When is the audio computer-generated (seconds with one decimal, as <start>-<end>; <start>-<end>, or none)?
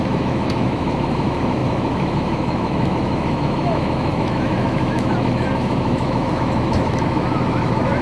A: 0.0-8.0